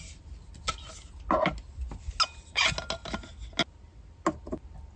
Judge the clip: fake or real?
real